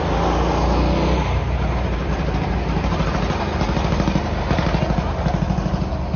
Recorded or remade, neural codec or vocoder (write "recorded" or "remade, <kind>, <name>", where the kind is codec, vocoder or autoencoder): recorded